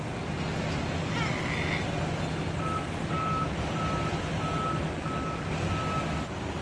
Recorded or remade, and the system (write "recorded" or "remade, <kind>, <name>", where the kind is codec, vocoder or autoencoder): recorded